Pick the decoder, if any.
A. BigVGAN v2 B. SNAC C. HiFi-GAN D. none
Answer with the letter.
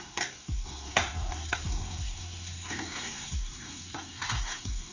B